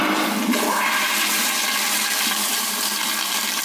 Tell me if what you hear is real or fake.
fake